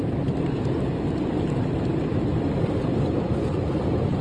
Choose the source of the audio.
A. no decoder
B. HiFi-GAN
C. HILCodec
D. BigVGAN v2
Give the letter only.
A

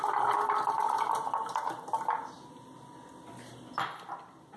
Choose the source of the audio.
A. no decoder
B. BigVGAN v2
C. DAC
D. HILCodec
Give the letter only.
A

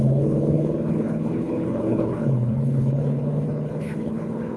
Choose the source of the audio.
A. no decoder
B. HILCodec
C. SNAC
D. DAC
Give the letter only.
B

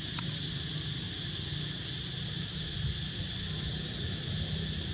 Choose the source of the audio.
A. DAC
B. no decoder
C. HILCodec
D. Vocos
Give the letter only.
B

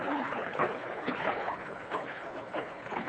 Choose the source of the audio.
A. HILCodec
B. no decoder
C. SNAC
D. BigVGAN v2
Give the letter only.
A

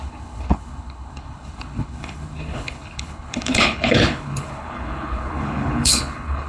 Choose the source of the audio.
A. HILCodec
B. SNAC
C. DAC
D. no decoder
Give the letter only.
A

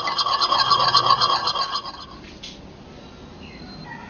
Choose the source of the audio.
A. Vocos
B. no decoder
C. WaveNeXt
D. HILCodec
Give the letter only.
B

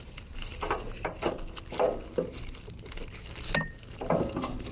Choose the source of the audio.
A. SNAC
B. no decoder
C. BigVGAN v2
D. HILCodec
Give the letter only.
B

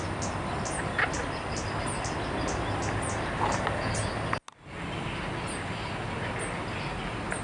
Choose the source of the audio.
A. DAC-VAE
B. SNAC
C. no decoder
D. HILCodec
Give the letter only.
C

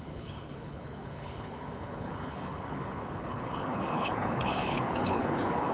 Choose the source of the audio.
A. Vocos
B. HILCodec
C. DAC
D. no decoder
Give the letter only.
B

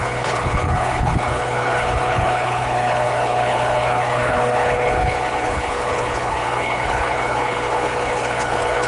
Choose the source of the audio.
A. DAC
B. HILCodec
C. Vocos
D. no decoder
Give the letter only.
B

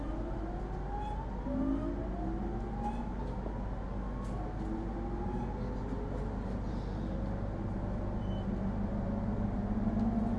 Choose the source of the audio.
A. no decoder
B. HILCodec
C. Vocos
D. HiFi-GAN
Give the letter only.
A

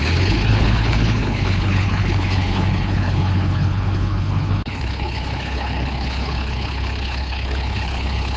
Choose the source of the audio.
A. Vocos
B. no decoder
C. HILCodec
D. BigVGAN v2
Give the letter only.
C